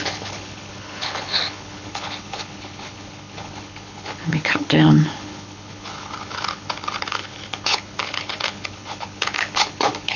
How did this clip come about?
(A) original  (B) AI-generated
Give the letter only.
B